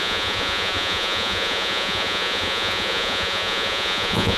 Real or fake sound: fake